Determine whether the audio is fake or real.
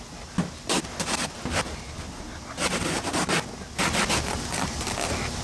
real